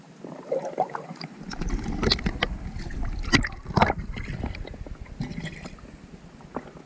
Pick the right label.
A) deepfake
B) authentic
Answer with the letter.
B